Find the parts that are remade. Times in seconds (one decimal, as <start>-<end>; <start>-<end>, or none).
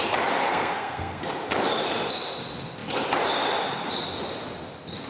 0.5-1.2